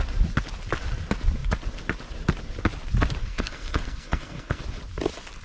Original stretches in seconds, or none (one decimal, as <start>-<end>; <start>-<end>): 0.0-3.2; 4.6-5.4

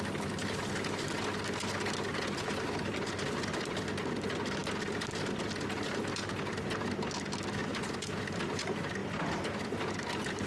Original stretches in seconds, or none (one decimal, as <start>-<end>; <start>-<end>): 0.0-10.5

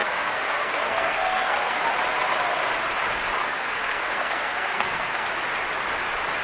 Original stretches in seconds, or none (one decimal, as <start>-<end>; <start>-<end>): 1.8-3.4; 5.3-6.4

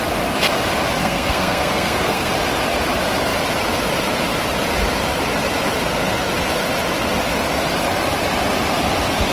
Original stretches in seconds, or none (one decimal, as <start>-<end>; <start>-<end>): 0.0-1.0; 2.3-9.3

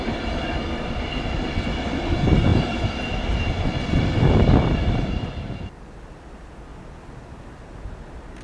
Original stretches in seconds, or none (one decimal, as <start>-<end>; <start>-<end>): 0.0-8.4

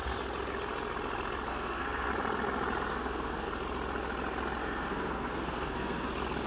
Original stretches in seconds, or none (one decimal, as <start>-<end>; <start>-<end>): 0.0-1.5; 2.1-2.9; 3.5-4.6; 6.1-6.5

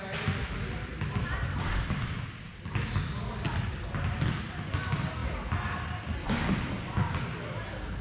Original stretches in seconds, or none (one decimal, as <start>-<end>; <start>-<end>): 0.0-8.0